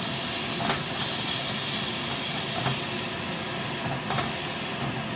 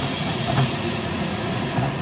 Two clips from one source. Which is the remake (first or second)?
second